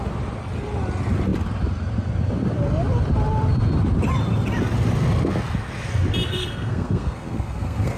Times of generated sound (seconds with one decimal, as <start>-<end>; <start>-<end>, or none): 6.3-8.0